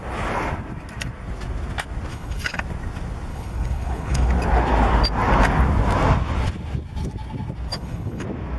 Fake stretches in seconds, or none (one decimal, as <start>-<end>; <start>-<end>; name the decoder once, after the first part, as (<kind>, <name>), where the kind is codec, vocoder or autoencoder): 2.1-2.6 (codec, HILCodec); 3.3-4.3; 7.7-8.2